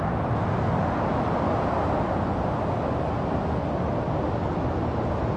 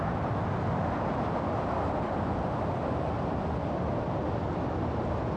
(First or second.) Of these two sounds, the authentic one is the first